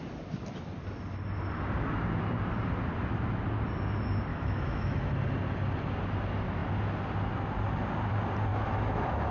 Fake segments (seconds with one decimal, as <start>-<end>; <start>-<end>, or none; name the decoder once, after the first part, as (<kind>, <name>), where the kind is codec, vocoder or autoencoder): 4.3-5.1 (autoencoder, DAC-VAE); 8.5-9.3